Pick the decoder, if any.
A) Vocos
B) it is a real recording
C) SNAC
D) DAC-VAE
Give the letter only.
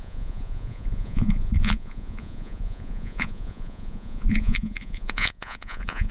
A